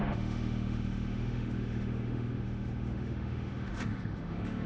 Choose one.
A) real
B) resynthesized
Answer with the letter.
B